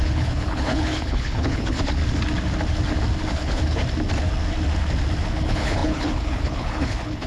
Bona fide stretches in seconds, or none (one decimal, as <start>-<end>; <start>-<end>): 2.0-3.3; 3.8-5.3